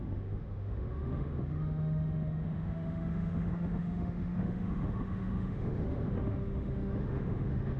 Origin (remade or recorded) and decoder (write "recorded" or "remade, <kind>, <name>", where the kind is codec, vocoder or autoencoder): remade, autoencoder, DAC-VAE